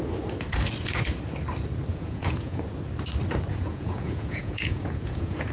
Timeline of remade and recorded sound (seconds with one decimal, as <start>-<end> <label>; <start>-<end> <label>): 0.0-1.9 recorded; 1.9-2.6 remade; 2.6-3.5 recorded; 3.5-5.5 remade